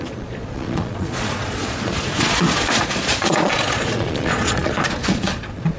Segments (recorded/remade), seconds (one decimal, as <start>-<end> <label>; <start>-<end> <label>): 0.0-5.8 remade